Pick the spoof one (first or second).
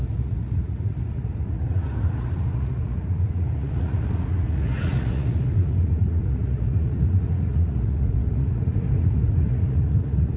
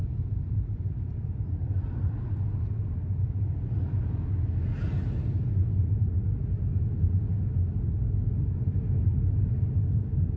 first